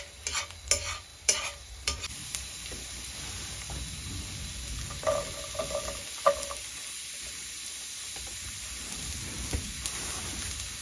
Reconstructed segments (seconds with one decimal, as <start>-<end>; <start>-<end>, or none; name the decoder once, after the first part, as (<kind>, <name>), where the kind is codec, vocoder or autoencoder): 1.1-3.7 (vocoder, BigVGAN v2)